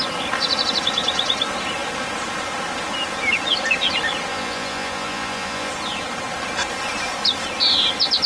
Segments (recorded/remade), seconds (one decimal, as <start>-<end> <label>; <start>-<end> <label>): 0.0-4.3 recorded; 4.3-5.7 remade; 5.7-8.3 recorded